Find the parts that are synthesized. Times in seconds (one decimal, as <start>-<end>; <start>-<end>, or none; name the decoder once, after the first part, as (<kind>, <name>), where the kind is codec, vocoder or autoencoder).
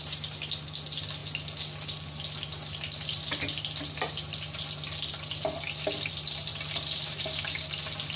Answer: none